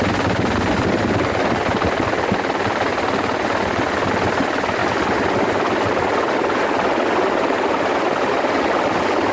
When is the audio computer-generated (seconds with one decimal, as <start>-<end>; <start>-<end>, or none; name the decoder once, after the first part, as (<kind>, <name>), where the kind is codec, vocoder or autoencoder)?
4.8-6.6 (vocoder, BigVGAN v2)